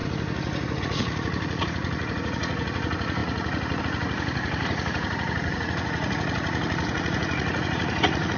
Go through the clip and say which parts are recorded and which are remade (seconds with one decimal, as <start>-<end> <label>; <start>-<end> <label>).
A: 0.0-0.8 recorded; 0.8-8.4 remade